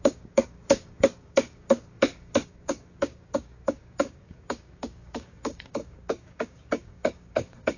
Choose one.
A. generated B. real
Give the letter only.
A